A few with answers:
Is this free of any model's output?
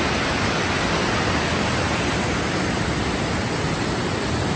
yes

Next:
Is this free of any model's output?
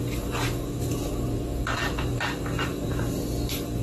no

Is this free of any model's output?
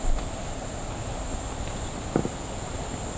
yes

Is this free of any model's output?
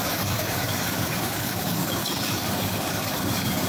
no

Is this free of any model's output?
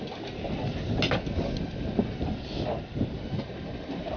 yes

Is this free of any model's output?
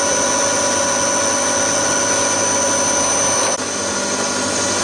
yes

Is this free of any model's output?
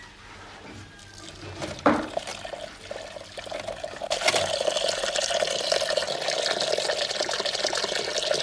yes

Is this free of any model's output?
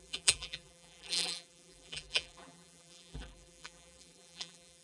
no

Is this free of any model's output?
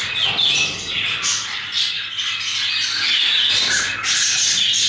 yes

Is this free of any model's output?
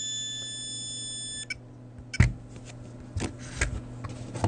yes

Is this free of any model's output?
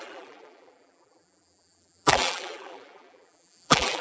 no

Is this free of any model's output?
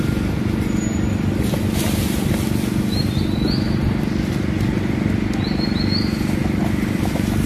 yes